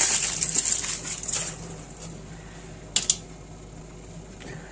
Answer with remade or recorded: recorded